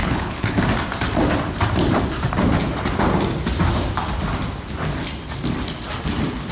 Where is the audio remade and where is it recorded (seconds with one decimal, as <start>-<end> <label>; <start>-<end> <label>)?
0.0-0.6 remade; 0.6-6.5 recorded